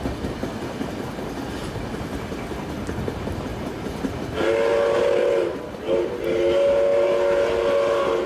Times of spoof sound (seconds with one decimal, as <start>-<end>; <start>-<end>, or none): none